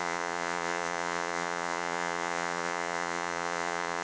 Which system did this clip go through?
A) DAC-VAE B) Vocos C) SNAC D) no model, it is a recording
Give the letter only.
B